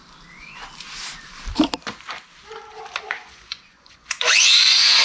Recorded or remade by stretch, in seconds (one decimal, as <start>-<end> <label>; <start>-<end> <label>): 0.0-3.0 recorded; 3.0-5.0 remade